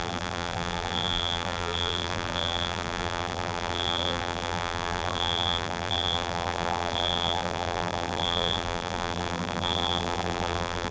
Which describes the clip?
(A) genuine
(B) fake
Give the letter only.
B